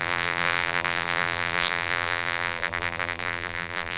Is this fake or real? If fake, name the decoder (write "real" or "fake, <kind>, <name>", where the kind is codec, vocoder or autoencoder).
fake, vocoder, BigVGAN v2